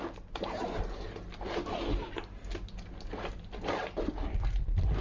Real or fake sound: real